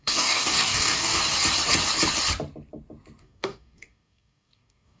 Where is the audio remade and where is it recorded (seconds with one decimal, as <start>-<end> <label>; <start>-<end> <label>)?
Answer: 0.0-1.2 remade; 1.2-3.2 recorded; 3.2-5.0 remade